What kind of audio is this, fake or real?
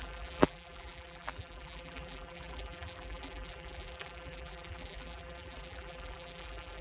fake